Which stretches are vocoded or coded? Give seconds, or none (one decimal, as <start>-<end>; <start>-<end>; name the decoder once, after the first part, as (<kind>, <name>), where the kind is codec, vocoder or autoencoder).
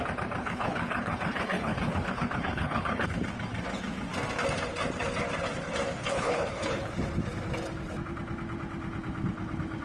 0.4-3.2 (codec, HILCodec); 6.0-6.9